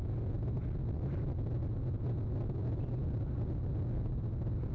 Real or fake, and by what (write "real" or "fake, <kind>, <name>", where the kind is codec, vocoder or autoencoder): real